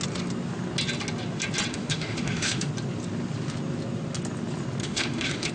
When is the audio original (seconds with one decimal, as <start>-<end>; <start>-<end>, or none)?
0.0-1.7; 2.7-4.8